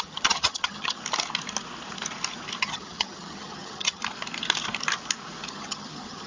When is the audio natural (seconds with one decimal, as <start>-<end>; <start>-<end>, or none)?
1.0-2.6; 4.0-5.5